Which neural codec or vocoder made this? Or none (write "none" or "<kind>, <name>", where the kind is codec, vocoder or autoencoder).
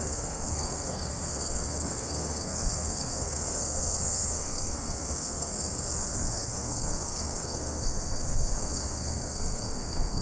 codec, SNAC